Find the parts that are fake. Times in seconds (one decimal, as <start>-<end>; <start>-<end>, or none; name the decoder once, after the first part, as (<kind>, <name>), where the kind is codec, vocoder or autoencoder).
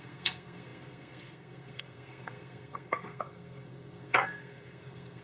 0.0-5.2 (codec, SNAC)